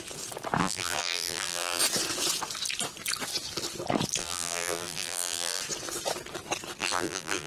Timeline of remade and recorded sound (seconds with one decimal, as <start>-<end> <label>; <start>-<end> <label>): 0.0-0.6 recorded; 0.6-1.8 remade; 1.8-4.2 recorded; 4.2-5.6 remade; 5.6-6.8 recorded; 6.8-7.5 remade